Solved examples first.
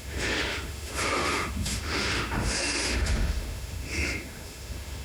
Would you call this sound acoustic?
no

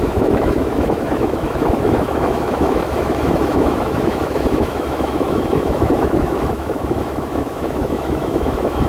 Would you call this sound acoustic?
no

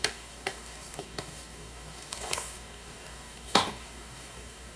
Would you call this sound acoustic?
no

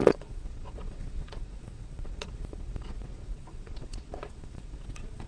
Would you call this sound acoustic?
no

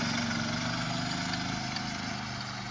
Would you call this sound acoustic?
yes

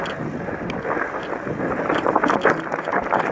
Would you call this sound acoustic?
yes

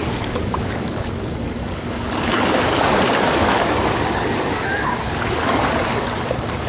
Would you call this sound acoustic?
no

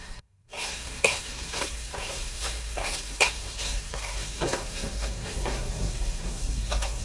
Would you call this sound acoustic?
no